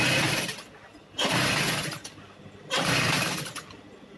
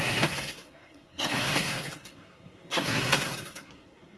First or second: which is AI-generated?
second